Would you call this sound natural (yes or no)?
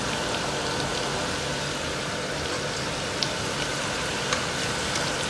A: no